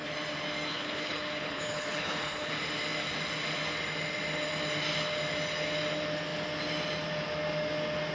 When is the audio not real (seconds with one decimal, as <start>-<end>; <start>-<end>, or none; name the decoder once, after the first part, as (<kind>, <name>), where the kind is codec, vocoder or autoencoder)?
0.7-2.5 (codec, HILCodec)